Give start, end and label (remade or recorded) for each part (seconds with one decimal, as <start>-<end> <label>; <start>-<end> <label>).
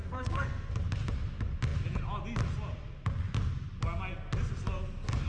0.0-0.7 remade; 0.7-5.3 recorded